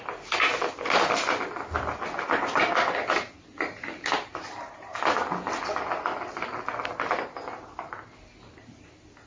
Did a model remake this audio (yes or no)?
no